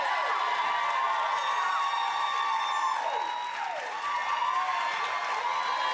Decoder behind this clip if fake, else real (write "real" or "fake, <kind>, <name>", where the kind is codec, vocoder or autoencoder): real